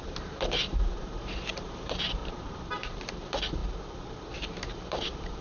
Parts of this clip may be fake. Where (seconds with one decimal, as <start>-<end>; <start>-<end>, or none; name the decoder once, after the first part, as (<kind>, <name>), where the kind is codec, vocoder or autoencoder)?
0.0-3.6 (vocoder, BigVGAN v2); 4.5-5.4